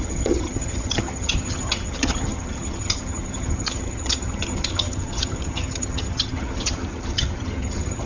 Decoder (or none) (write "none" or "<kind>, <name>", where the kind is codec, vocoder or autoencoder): vocoder, HiFi-GAN